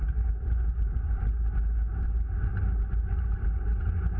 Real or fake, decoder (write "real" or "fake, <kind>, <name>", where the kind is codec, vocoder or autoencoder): real